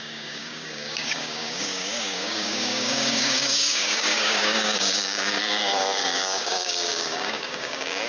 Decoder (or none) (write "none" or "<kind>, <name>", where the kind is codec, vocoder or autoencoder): codec, DAC